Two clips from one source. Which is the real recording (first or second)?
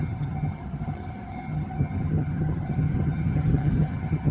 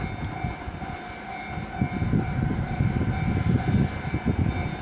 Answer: second